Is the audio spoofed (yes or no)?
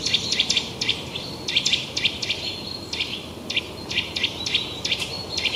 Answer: yes